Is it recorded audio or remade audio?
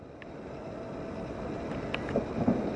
recorded